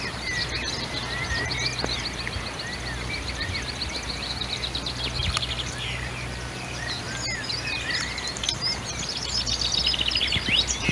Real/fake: fake